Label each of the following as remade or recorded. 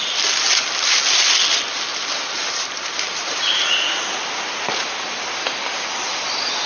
recorded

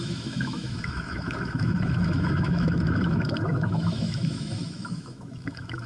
remade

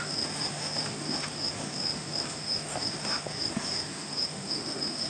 remade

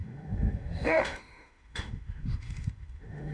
remade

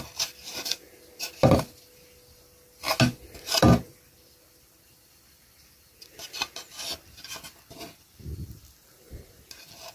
recorded